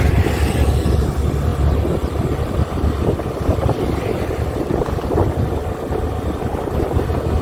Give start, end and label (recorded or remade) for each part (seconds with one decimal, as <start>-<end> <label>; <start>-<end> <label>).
0.0-7.4 recorded